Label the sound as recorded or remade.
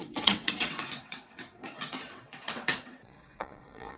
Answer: remade